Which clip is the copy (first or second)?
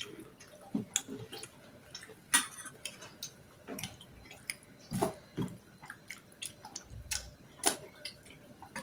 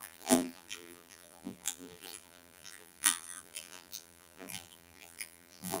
second